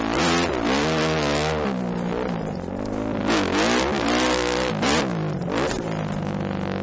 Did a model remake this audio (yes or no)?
no